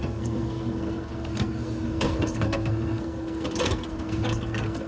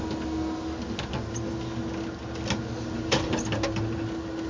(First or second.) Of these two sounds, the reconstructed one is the first